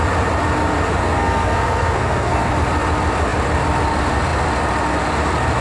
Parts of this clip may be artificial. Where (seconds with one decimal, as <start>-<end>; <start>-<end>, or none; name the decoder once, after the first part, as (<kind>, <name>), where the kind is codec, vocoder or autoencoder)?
1.0-2.5 (codec, SNAC)